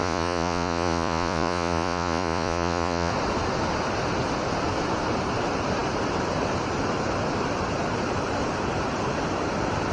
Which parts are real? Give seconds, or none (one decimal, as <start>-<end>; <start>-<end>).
3.1-9.9